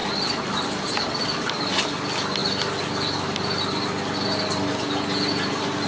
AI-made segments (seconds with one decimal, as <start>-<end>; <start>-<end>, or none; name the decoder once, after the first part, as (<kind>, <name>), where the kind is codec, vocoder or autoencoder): 0.0-1.1 (vocoder, BigVGAN v2)